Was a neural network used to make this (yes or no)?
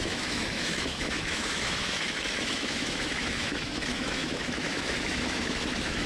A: yes